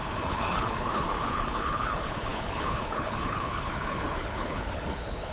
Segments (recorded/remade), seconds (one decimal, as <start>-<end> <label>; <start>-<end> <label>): 0.0-5.3 remade